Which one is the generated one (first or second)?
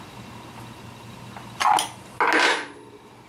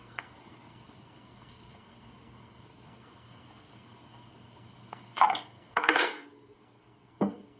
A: second